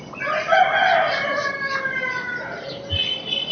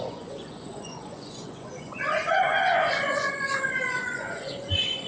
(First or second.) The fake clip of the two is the second